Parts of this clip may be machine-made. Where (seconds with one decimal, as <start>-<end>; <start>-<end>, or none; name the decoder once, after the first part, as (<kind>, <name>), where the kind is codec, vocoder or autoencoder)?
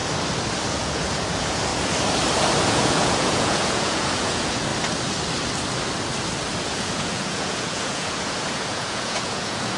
0.7-1.7 (vocoder, Vocos); 2.6-4.7; 6.6-9.8